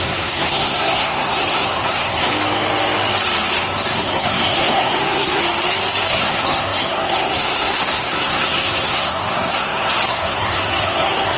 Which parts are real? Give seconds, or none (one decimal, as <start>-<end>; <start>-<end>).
2.3-3.9; 5.4-6.1